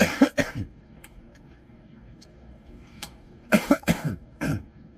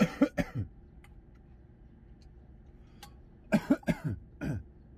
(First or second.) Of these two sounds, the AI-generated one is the first